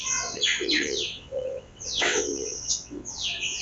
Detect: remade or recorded remade